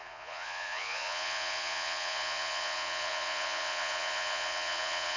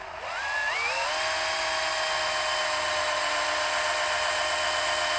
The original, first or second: second